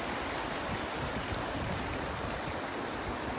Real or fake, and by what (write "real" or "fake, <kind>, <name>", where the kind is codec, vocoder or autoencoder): real